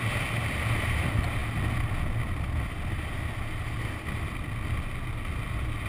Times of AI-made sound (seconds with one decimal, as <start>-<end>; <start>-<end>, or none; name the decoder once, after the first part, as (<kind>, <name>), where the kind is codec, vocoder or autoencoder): none